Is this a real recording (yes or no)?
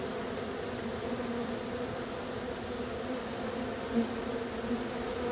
yes